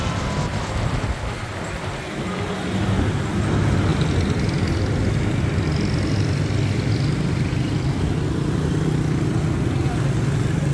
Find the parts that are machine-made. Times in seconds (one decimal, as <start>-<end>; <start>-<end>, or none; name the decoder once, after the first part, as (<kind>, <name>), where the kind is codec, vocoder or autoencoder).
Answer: none